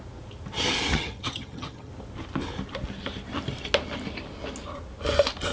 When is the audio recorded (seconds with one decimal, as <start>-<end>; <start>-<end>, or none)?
0.0-0.9; 1.9-5.5